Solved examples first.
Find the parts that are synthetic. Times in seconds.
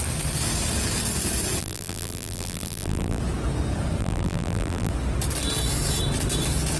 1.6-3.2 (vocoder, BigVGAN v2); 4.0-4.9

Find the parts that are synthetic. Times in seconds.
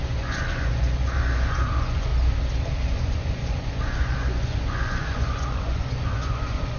0.0-2.1 (vocoder, Vocos); 2.8-6.8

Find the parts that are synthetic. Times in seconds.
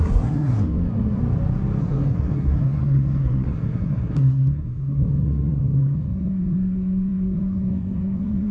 0.0-1.2 (codec, SNAC); 1.8-8.5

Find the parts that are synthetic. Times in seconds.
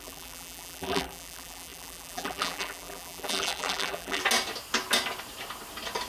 0.0-4.2 (vocoder, BigVGAN v2)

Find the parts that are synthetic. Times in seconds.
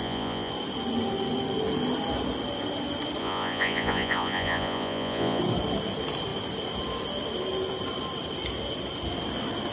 0.0-0.5 (vocoder, Vocos); 3.2-5.4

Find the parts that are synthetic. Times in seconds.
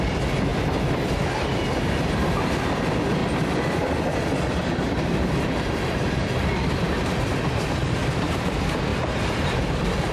0.0-0.5 (vocoder, BigVGAN v2); 2.7-3.2; 4.7-8.9; 9.7-10.1